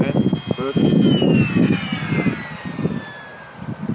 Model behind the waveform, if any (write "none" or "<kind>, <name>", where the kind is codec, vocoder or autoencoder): none